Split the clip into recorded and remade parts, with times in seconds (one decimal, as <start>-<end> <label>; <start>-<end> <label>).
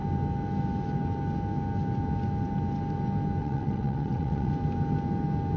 0.0-3.4 recorded; 3.4-4.5 remade; 4.5-5.6 recorded